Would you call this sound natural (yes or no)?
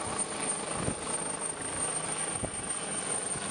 yes